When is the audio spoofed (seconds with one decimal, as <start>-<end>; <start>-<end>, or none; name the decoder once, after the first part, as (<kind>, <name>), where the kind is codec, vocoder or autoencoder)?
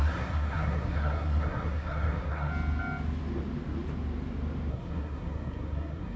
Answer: 0.0-2.5 (codec, SNAC); 4.7-6.2